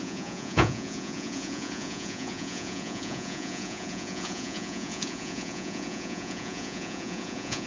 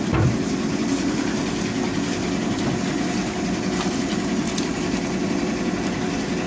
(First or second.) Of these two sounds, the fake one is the first